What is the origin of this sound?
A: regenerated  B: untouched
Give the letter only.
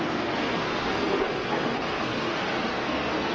A